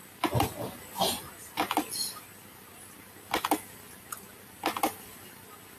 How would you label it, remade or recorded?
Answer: recorded